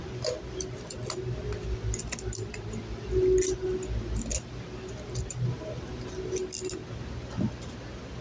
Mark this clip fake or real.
real